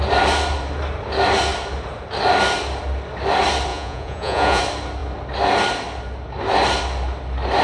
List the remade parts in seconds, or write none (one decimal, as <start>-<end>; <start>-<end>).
3.7-4.6